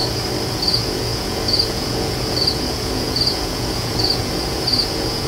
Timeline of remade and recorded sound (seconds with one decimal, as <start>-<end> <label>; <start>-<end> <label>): 0.0-0.5 recorded; 0.5-5.3 remade